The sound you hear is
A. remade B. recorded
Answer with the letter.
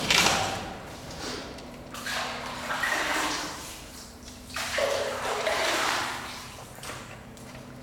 A